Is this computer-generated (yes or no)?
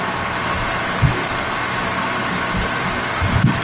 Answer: no